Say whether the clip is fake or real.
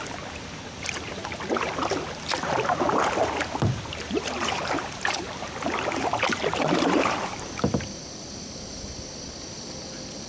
real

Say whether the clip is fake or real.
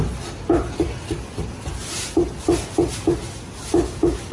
real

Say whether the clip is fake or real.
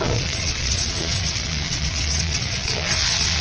fake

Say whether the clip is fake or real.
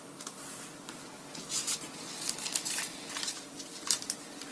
fake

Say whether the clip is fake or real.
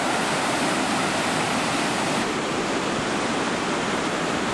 real